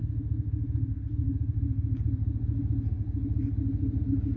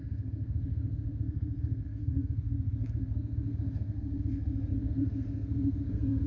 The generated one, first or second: second